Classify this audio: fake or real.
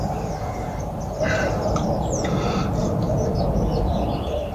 fake